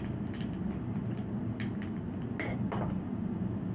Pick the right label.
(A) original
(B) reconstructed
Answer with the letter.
A